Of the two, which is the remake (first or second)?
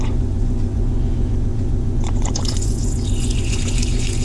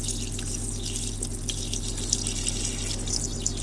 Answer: first